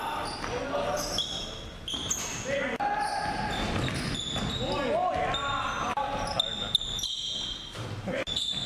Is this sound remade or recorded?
recorded